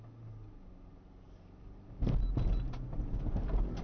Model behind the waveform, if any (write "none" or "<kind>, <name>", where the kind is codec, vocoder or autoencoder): none